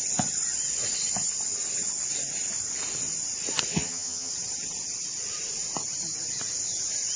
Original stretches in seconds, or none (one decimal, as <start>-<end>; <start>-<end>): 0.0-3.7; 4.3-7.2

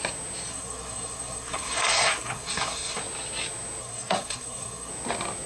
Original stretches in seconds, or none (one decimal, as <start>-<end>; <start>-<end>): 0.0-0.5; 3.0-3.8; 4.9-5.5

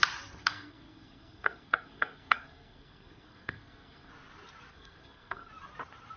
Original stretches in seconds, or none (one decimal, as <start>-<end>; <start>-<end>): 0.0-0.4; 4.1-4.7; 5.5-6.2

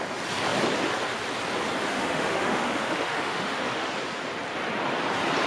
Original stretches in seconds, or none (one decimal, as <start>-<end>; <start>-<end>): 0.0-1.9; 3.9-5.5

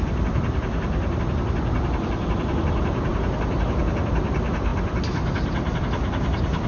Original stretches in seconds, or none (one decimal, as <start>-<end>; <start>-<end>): 0.0-6.7